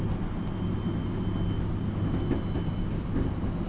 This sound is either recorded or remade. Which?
recorded